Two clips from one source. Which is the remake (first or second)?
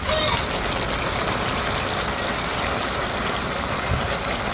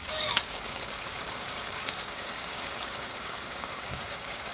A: second